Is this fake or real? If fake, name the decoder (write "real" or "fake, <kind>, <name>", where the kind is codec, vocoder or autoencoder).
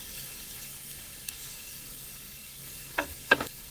fake, codec, SNAC